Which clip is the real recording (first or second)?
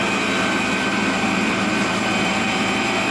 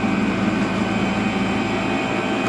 second